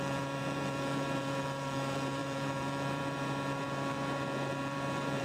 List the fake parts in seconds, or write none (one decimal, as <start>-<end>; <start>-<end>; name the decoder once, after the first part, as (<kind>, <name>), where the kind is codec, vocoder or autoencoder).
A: 0.0-5.2 (vocoder, BigVGAN v2)